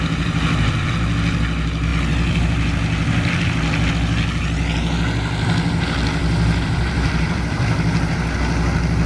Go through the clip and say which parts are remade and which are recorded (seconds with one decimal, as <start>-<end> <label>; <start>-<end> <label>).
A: 0.0-6.2 recorded; 6.2-8.1 remade; 8.1-9.1 recorded